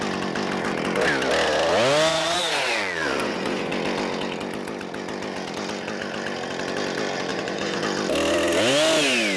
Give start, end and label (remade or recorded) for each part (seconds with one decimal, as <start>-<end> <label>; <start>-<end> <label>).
0.0-2.1 recorded; 2.1-3.7 remade; 3.7-7.3 recorded; 7.3-7.8 remade; 7.8-9.4 recorded